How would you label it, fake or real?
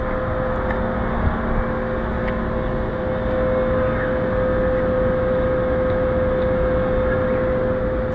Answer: real